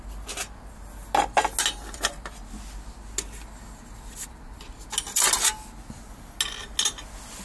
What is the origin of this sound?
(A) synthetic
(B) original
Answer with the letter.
B